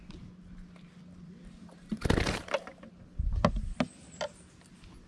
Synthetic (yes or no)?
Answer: no